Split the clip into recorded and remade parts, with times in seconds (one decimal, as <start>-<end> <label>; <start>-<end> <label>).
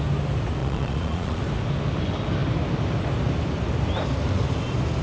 0.0-0.6 recorded; 0.6-1.4 remade; 1.4-5.0 recorded